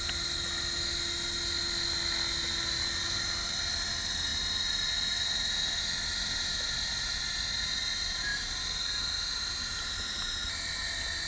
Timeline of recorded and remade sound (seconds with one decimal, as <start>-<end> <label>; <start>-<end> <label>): 0.0-11.3 recorded